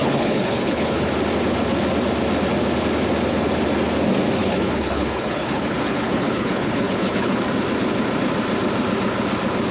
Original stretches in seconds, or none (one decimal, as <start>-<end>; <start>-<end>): 1.1-4.4; 7.4-9.7